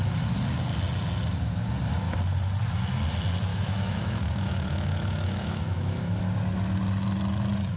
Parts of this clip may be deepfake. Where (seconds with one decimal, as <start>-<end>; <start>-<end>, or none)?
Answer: 3.5-6.2